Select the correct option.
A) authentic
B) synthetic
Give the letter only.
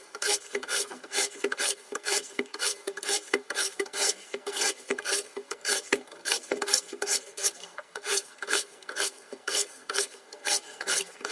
B